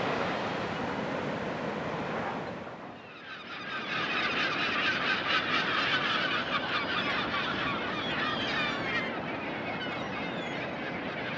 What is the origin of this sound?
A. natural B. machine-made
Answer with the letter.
A